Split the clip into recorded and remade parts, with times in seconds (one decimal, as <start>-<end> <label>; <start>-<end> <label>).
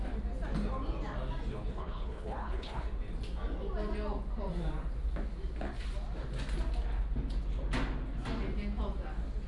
0.0-1.7 recorded; 1.7-2.8 remade; 2.8-9.5 recorded